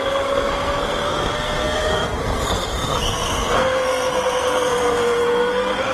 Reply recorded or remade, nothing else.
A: remade